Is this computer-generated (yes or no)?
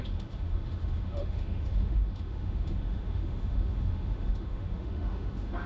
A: yes